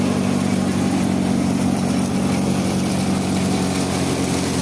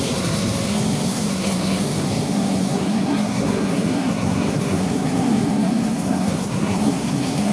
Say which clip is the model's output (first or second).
second